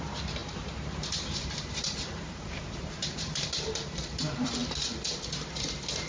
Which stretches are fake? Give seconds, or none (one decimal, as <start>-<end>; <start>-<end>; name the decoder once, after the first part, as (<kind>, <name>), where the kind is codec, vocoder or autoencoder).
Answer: 0.0-4.6 (vocoder, BigVGAN v2)